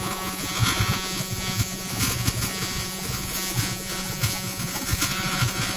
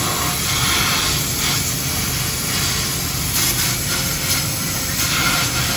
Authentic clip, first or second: second